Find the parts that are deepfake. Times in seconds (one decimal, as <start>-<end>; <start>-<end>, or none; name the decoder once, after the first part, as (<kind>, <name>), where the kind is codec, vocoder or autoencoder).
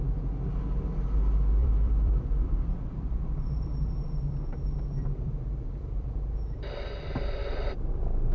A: 1.6-6.2 (vocoder, BigVGAN v2); 7.4-7.9